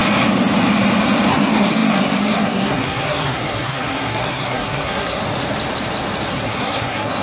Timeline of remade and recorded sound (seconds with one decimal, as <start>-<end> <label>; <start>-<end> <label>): 0.0-1.3 recorded; 1.3-5.2 remade; 5.2-6.3 recorded; 6.3-7.2 remade